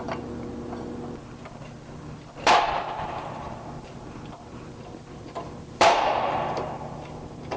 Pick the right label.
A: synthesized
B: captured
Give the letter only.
A